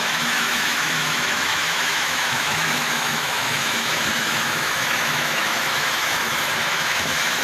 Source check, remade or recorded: remade